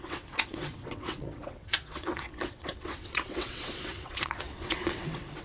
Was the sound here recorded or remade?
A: remade